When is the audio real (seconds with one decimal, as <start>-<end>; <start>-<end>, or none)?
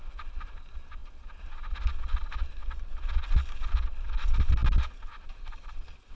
0.0-6.1